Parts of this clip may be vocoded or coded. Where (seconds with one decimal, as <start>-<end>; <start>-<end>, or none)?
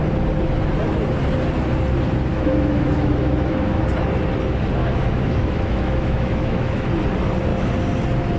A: 2.3-3.8; 4.8-6.9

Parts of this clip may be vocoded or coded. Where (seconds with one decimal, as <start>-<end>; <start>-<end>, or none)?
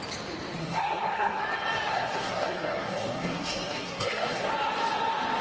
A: 0.6-1.4; 1.9-4.5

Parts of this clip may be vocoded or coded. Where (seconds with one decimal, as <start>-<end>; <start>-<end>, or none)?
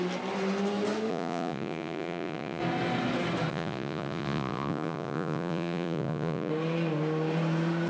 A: 1.1-2.6; 3.5-6.5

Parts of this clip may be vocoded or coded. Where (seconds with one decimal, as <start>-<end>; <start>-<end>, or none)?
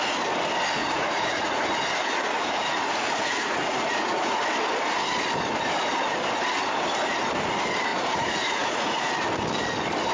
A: 0.8-1.6; 2.0-4.4; 7.9-9.1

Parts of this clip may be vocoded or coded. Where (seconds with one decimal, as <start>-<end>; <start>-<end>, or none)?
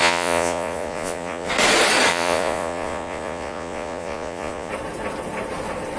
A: 0.0-1.5; 2.1-4.7